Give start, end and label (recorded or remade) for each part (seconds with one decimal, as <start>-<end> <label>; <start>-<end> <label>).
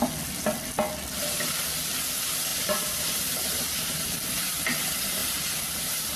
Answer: 0.0-2.5 recorded; 2.5-4.5 remade; 4.5-6.2 recorded